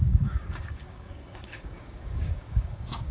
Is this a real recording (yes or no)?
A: no